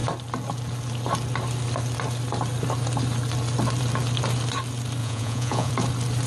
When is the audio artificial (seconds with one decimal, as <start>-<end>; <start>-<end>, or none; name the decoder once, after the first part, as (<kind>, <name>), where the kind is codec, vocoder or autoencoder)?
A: 5.0-5.7 (vocoder, Vocos)